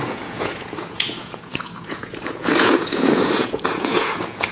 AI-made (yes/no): yes